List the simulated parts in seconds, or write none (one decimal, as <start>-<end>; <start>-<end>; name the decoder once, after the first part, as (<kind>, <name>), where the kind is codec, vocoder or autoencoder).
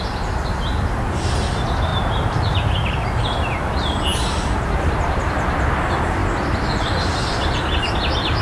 1.9-3.2 (vocoder, BigVGAN v2); 4.1-5.2